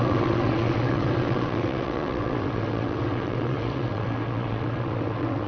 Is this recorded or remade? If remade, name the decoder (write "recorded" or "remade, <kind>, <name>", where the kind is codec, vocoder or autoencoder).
remade, vocoder, WaveNeXt